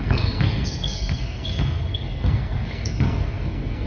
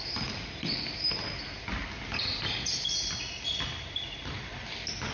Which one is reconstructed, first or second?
first